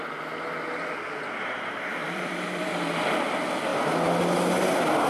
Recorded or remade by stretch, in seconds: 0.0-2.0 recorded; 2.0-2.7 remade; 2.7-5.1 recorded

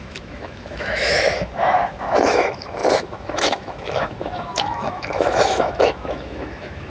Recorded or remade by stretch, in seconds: 0.0-6.9 remade

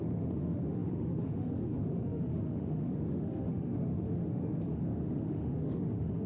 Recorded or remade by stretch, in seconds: 0.0-6.3 remade

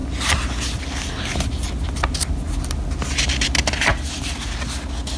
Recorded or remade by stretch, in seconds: 0.0-5.2 recorded

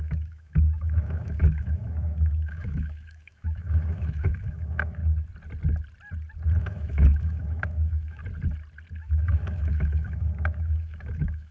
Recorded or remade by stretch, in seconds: 0.0-5.0 remade; 5.0-6.6 recorded; 6.6-8.2 remade; 8.2-9.0 recorded; 9.0-11.5 remade